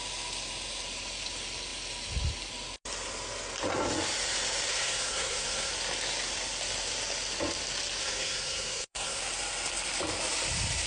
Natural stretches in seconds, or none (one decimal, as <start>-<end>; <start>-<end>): 0.0-4.7; 5.7-8.0; 9.2-10.9